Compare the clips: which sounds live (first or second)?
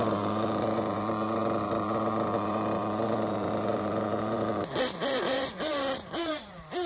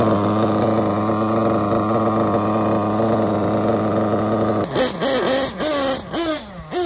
second